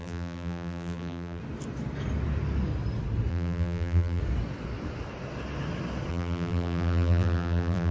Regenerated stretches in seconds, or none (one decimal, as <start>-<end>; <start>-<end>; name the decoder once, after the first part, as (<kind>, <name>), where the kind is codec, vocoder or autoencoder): 0.0-1.4 (vocoder, BigVGAN v2); 3.3-4.2; 6.1-7.9